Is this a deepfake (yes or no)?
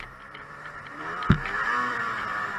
yes